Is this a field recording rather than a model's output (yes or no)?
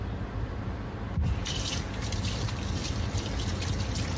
no